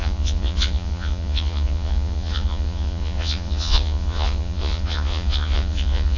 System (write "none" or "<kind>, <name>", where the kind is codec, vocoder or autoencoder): vocoder, Vocos